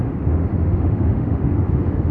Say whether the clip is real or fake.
fake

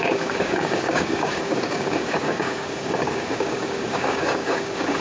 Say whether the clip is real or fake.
fake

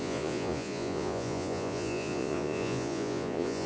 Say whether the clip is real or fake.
fake